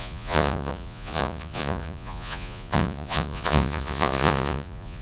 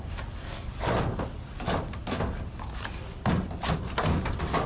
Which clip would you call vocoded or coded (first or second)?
first